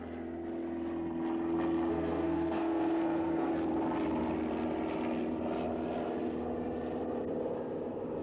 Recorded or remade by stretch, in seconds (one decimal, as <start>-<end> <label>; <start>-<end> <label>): 0.0-1.9 recorded; 1.9-3.5 remade; 3.5-8.2 recorded